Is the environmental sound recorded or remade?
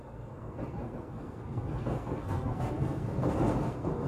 remade